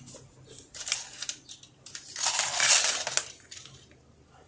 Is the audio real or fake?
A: real